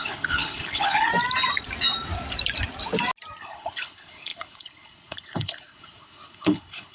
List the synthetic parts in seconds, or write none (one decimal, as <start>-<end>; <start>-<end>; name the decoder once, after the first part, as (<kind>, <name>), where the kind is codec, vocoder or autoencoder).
0.0-1.1 (codec, HILCodec); 3.4-6.9